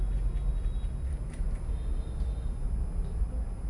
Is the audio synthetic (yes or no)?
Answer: no